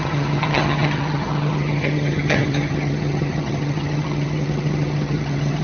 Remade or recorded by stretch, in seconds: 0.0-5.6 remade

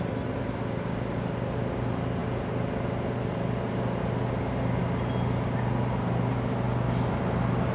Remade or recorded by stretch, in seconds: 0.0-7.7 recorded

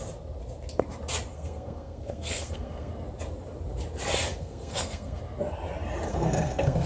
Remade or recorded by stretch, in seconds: 0.0-1.3 recorded; 1.3-2.9 remade; 2.9-4.3 recorded; 4.3-5.2 remade; 5.2-6.1 recorded; 6.1-6.9 remade

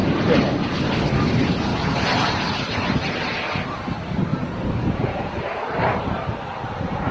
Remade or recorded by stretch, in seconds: 0.0-0.9 remade; 0.9-4.3 recorded; 4.3-7.1 remade

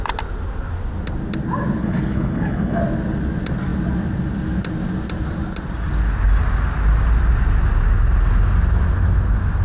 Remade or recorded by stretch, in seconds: 0.0-1.8 recorded; 1.8-2.8 remade; 2.8-9.6 recorded

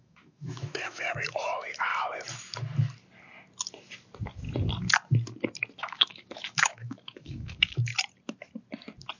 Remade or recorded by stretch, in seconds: 0.0-1.9 remade; 1.9-5.8 recorded; 5.8-7.9 remade; 7.9-9.2 recorded

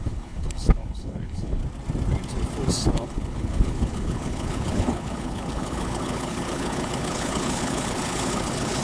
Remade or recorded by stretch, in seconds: 0.0-1.6 remade; 1.6-2.9 recorded; 2.9-8.8 remade

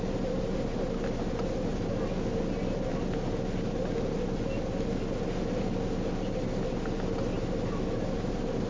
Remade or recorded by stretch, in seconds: 0.0-8.7 recorded